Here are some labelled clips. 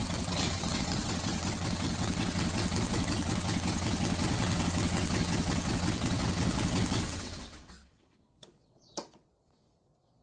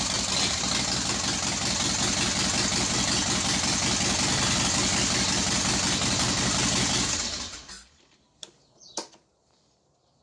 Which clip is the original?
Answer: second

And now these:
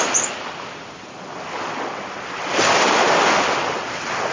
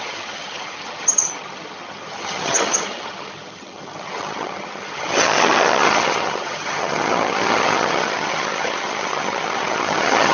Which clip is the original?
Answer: first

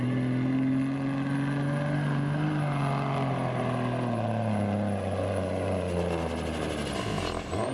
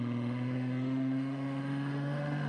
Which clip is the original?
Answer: first